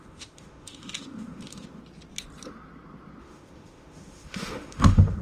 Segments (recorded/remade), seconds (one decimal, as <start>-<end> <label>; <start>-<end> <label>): 0.0-1.8 remade; 1.8-3.2 recorded; 3.2-5.2 remade